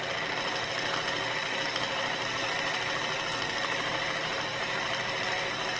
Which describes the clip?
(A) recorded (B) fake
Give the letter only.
A